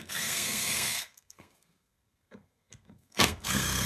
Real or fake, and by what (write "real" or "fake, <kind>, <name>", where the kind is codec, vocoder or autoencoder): fake, codec, SNAC